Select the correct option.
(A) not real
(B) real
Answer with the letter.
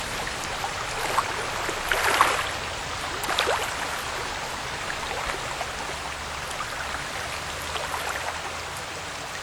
B